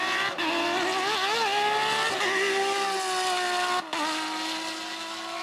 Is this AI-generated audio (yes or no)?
no